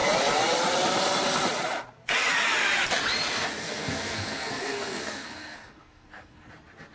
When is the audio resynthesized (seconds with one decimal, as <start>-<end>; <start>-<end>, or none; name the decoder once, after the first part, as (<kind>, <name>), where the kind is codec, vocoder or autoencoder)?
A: 3.6-6.5 (codec, SNAC)